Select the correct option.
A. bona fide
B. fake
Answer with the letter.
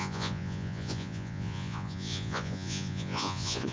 B